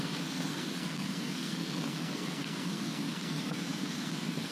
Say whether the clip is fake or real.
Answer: fake